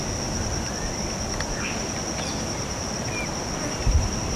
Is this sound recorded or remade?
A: recorded